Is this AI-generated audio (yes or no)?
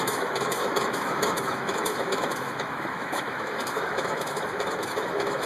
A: yes